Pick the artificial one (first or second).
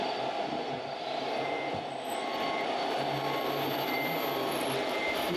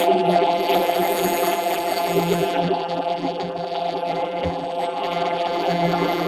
second